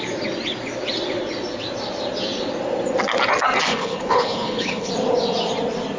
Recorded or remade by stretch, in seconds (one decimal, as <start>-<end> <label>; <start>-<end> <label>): 0.0-3.7 recorded; 3.7-4.9 remade; 4.9-6.0 recorded

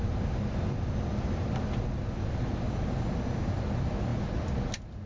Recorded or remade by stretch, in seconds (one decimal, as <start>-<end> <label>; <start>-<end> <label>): 0.0-5.1 recorded

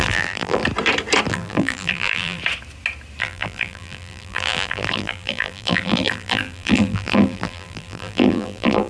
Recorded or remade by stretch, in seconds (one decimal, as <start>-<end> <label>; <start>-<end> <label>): 0.0-0.6 remade; 0.6-1.3 recorded; 1.3-2.4 remade; 2.4-3.2 recorded; 3.2-8.9 remade

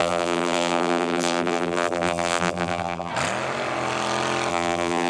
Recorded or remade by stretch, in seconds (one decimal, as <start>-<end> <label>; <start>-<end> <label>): 0.0-3.1 remade; 3.1-4.5 recorded; 4.5-5.1 remade

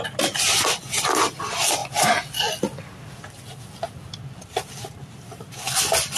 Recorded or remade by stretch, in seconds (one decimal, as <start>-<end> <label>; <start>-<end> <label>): 0.0-6.2 recorded

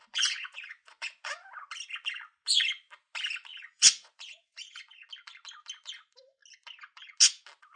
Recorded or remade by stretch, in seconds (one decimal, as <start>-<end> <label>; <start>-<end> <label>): 0.0-1.4 remade; 1.4-3.5 recorded; 3.5-5.1 remade; 5.1-7.8 recorded

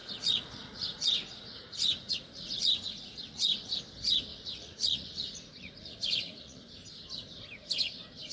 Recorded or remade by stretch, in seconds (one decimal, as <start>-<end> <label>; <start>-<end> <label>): 0.0-3.8 remade; 3.8-4.3 recorded; 4.3-6.7 remade; 6.7-8.3 recorded

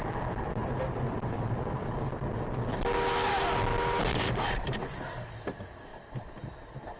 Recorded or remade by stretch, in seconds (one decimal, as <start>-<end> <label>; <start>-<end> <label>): 0.0-0.6 recorded; 0.6-1.9 remade; 1.9-4.1 recorded; 4.1-4.8 remade; 4.8-5.9 recorded; 5.9-7.0 remade